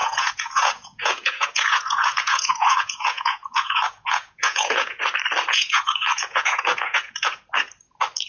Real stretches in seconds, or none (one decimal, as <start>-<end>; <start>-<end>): 5.0-5.5; 7.4-8.3